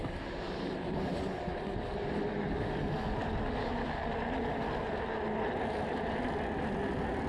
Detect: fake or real real